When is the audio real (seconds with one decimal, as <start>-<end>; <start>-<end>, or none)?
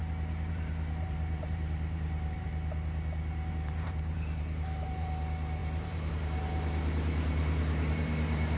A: 0.0-0.5; 2.5-3.5